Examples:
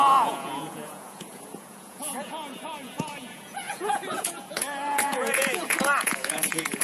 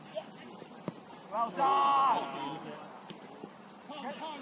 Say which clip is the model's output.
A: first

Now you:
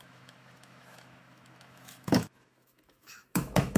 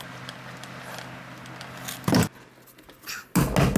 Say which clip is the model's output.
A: first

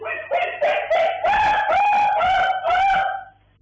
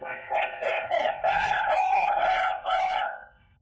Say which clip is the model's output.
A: second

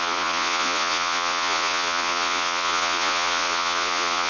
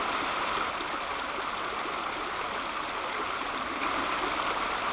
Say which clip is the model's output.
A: first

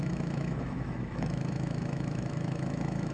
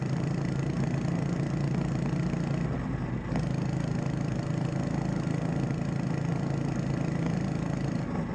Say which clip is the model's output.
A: first